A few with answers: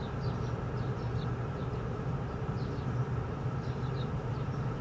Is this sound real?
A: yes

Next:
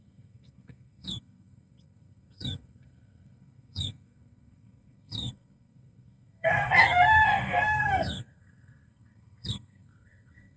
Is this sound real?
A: no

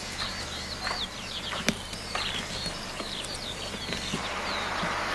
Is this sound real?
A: no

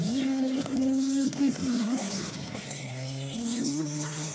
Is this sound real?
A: no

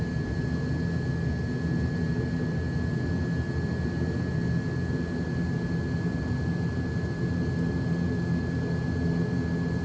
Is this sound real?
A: yes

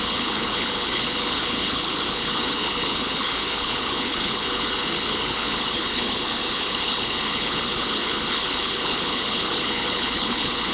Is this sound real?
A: no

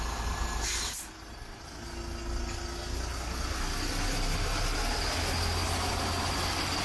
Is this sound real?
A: yes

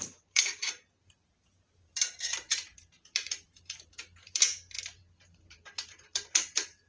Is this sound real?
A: no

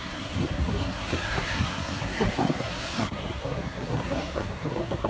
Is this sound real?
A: no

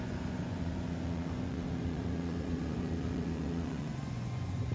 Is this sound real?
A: no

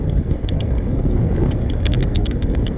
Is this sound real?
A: no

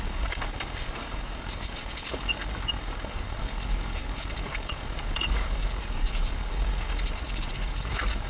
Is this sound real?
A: no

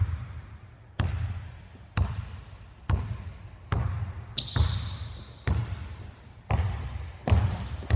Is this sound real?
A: yes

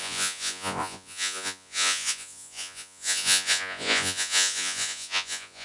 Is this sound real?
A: no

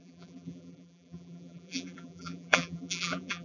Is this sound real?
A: no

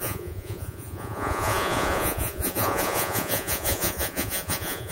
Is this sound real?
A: no